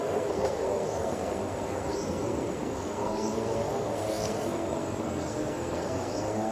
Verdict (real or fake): fake